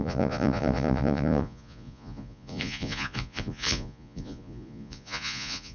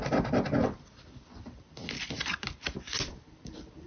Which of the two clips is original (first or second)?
second